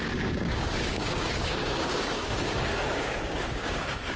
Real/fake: fake